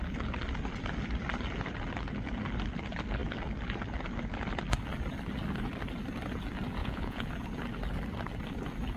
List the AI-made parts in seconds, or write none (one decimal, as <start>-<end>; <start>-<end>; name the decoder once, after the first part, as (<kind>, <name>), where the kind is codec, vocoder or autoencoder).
6.8-7.3 (vocoder, Vocos)

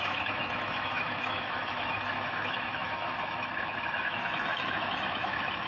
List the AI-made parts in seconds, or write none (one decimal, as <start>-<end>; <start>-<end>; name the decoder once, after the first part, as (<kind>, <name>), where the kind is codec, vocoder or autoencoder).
0.0-5.7 (autoencoder, DAC-VAE)

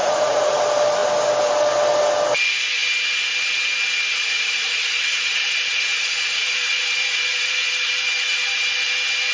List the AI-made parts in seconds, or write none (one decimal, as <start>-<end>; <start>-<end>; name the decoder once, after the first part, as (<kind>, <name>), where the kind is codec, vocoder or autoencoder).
0.0-0.6 (vocoder, Vocos); 4.1-7.7

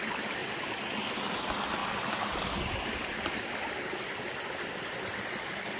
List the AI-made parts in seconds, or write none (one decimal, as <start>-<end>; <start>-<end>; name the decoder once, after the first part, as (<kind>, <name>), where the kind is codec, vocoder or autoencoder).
1.8-5.3 (vocoder, BigVGAN v2)